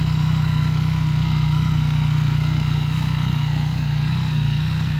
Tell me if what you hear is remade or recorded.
remade